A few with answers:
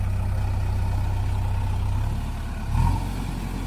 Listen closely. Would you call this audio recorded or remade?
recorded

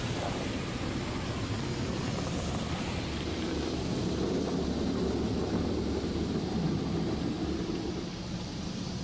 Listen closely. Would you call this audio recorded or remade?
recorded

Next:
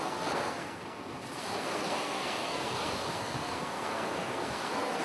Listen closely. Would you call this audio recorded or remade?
remade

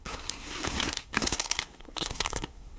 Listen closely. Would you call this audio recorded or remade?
remade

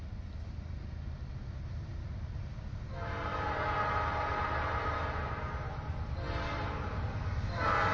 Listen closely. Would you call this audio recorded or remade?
recorded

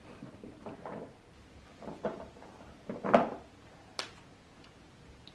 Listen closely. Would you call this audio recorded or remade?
recorded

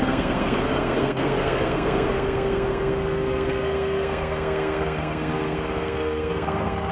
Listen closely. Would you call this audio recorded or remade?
remade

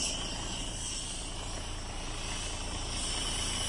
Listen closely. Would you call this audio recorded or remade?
recorded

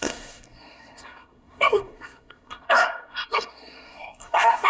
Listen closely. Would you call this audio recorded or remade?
remade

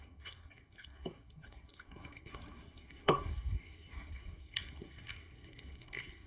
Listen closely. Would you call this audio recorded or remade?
remade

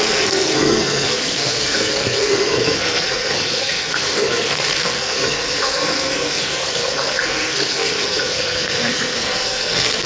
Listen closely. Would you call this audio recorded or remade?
remade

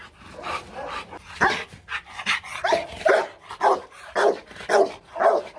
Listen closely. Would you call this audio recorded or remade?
recorded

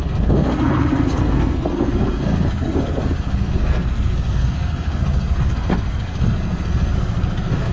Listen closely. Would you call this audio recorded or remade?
remade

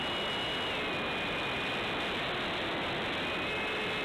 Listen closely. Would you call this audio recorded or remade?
recorded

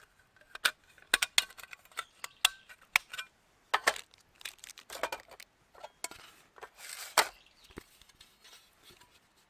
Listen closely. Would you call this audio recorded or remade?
recorded